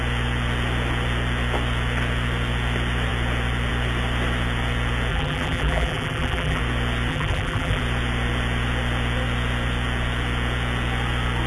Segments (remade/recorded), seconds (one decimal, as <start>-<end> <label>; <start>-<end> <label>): 0.0-5.1 recorded; 5.1-6.6 remade; 6.6-7.1 recorded; 7.1-7.8 remade; 7.8-11.5 recorded